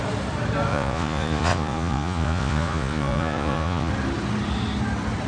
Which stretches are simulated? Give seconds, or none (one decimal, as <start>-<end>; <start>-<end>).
0.7-3.9